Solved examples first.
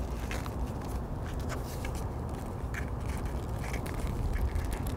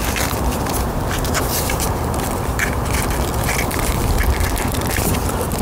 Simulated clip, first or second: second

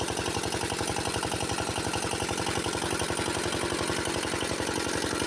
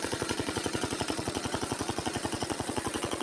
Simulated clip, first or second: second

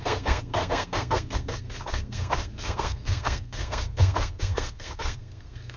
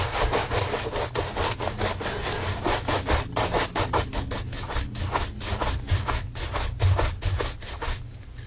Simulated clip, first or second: first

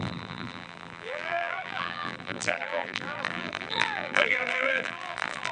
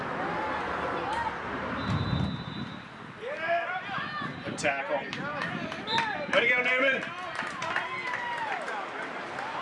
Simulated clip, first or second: first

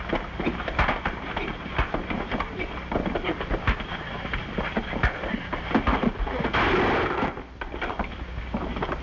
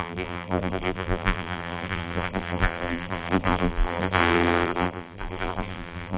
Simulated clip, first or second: second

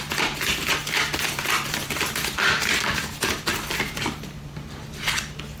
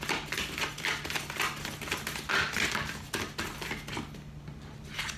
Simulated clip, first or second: first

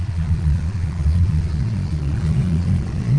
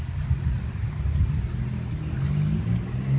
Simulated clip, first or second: first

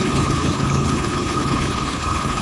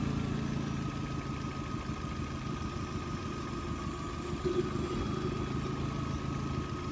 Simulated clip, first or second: first